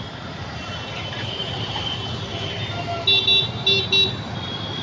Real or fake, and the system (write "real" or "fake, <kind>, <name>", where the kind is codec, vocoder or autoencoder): real